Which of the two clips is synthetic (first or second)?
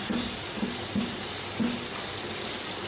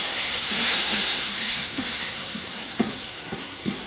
second